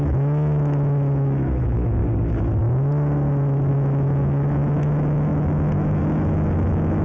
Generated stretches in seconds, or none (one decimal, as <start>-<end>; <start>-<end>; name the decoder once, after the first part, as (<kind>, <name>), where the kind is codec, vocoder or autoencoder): 0.0-2.0 (autoencoder, DAC-VAE); 3.7-7.0